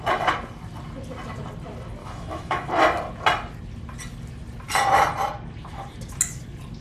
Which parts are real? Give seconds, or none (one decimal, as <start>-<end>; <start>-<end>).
0.0-2.0; 2.7-6.8